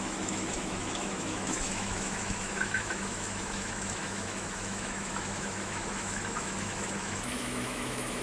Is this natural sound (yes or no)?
no